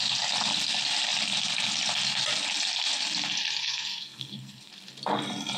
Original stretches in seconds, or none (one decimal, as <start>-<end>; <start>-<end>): 0.0-3.6; 4.7-5.6